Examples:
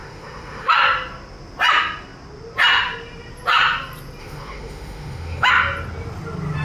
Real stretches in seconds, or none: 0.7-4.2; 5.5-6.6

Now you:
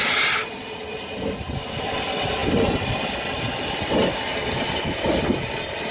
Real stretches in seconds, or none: 0.0-5.9

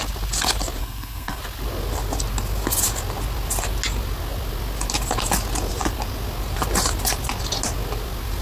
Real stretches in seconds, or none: 0.0-0.8; 1.4-8.4

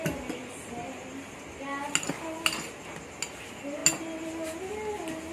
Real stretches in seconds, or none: 0.0-5.3

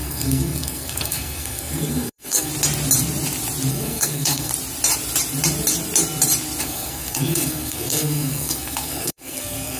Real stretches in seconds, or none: 2.5-3.7; 4.5-6.6

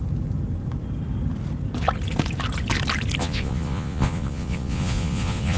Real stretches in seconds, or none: 0.0-3.2

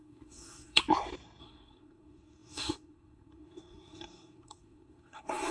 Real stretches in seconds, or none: 0.8-1.4

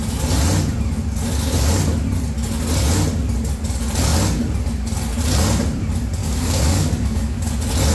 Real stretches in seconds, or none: 0.0-6.2; 7.5-7.9